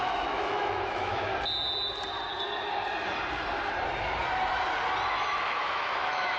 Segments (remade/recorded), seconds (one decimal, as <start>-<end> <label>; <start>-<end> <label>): 0.0-1.3 remade; 1.3-5.1 recorded; 5.1-6.4 remade